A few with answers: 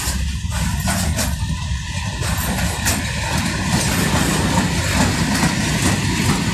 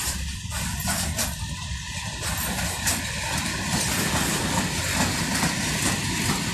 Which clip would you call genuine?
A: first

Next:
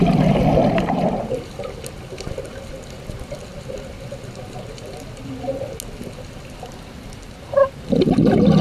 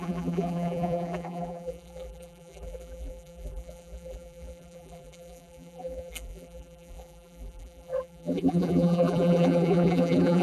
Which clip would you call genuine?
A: first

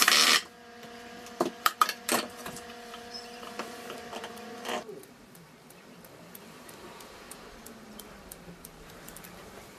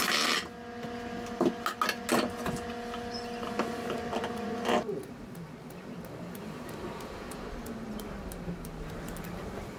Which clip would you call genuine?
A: second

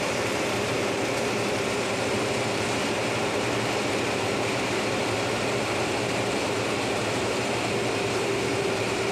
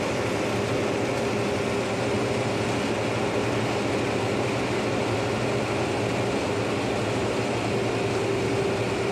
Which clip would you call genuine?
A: second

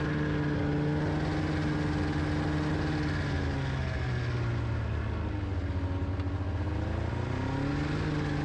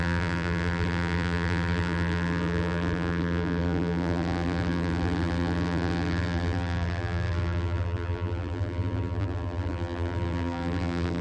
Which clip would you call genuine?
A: first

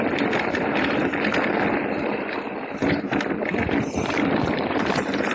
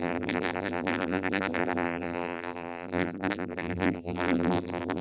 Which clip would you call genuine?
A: first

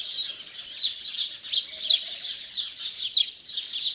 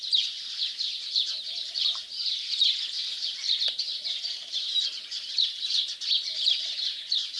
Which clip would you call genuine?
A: first